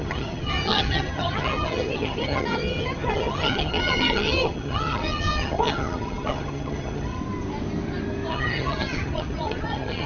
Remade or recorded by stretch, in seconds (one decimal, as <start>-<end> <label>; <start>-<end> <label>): 0.0-7.2 remade; 7.2-8.3 recorded; 8.3-10.1 remade